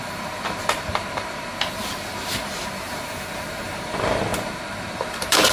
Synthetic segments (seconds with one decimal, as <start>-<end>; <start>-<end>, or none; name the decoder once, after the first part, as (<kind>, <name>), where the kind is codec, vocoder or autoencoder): 0.0-1.5 (vocoder, BigVGAN v2); 2.2-5.5